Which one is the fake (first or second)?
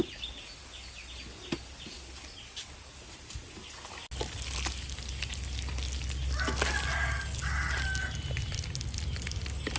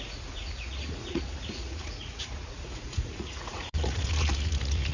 second